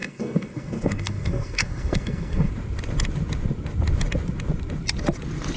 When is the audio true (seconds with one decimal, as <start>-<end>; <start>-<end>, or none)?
2.5-5.6